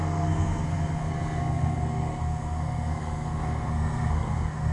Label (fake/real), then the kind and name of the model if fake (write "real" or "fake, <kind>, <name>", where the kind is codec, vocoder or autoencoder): fake, codec, SNAC